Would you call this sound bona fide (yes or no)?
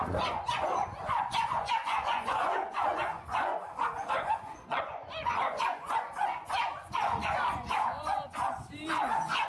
no